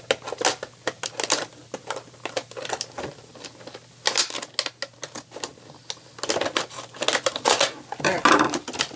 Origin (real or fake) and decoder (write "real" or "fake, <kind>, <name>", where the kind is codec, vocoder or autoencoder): real